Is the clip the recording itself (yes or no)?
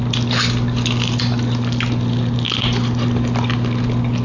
yes